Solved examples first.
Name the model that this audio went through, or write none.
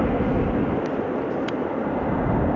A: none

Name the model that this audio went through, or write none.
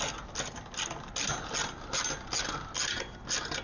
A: none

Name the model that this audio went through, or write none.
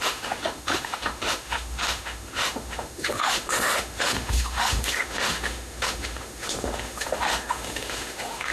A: autoencoder, DAC-VAE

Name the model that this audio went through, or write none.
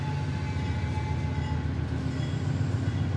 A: none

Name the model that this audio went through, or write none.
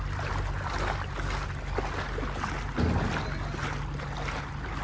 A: none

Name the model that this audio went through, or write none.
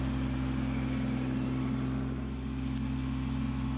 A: none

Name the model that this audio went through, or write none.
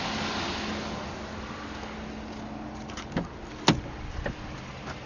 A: none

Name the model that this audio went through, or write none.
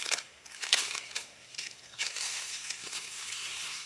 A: codec, SNAC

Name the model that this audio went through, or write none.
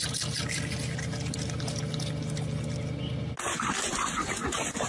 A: none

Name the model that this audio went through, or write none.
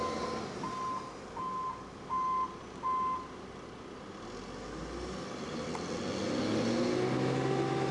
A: none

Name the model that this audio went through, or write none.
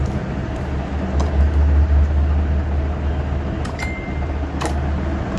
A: none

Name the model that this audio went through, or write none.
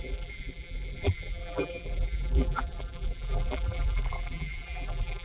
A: vocoder, BigVGAN v2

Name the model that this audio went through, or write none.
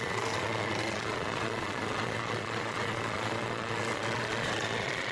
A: vocoder, Vocos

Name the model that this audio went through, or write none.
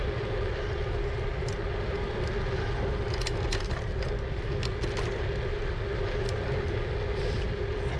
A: none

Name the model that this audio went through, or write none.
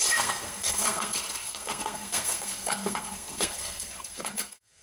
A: codec, SNAC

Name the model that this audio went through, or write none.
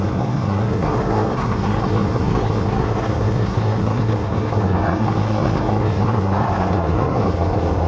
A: codec, SNAC